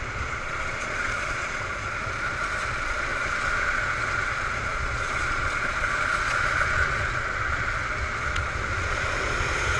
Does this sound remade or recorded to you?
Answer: remade